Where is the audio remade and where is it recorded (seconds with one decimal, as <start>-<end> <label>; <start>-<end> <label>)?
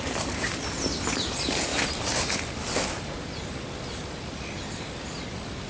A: 0.0-5.7 recorded